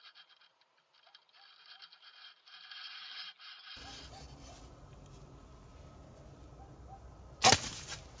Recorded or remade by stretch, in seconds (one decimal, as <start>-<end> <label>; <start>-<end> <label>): 0.0-8.2 recorded